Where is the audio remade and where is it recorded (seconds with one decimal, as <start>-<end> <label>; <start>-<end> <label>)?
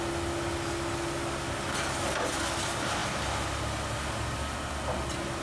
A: 0.0-5.4 recorded